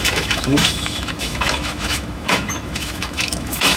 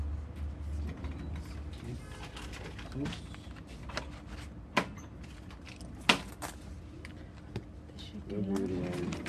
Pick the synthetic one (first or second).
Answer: first